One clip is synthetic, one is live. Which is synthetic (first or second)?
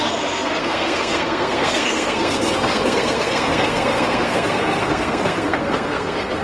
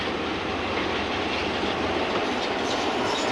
first